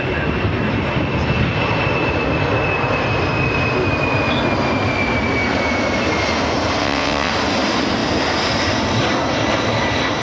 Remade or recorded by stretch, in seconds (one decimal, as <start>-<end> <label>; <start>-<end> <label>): 0.0-6.8 recorded; 6.8-7.3 remade; 7.3-10.2 recorded